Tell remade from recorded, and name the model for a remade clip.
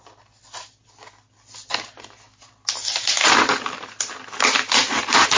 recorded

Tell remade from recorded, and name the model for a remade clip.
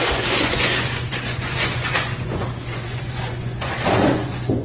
remade, vocoder, Vocos